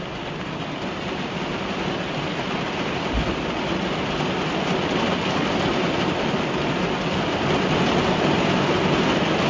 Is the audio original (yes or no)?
yes